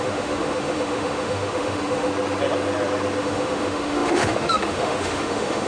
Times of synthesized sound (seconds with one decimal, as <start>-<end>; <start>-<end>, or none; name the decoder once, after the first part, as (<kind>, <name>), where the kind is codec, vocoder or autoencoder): 0.0-2.1 (autoencoder, DAC-VAE); 3.2-5.7